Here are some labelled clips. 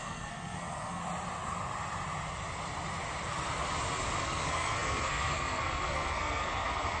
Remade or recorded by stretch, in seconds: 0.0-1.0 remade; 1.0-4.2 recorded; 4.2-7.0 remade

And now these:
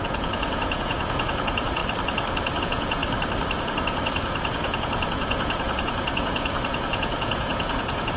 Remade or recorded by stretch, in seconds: 0.0-1.8 remade; 1.8-2.6 recorded; 2.6-3.0 remade; 3.0-3.6 recorded; 3.6-8.2 remade

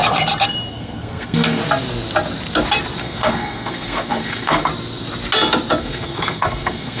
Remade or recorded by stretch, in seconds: 0.0-0.7 recorded; 0.7-1.6 remade; 1.6-3.0 recorded; 3.0-4.7 remade; 4.7-5.8 recorded; 5.8-7.0 remade

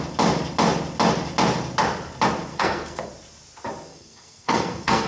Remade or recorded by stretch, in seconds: 0.0-2.5 recorded; 2.5-3.1 remade; 3.1-3.9 recorded; 3.9-5.1 remade

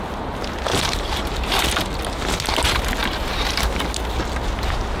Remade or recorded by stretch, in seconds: 0.0-0.7 recorded; 0.7-1.6 remade; 1.6-5.0 recorded

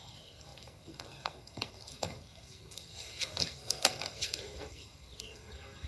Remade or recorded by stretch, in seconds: 0.0-5.9 remade

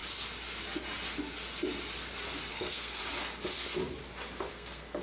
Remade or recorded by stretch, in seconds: 0.0-2.5 recorded; 2.5-3.0 remade; 3.0-4.5 recorded; 4.5-5.0 remade

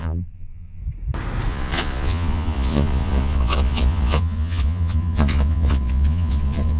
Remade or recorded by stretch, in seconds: 0.0-0.8 remade; 0.8-1.5 recorded; 1.5-6.8 remade